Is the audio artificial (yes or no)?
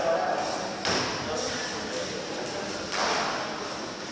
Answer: no